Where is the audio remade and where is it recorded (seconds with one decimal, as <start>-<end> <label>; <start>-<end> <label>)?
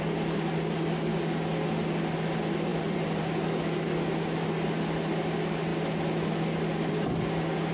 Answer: 0.0-7.7 recorded